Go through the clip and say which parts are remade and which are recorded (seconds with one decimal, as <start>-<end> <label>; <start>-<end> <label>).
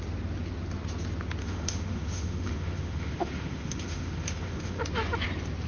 0.0-1.4 recorded; 1.4-4.8 remade; 4.8-5.7 recorded